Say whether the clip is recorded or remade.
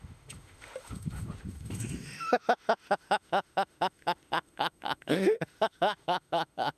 remade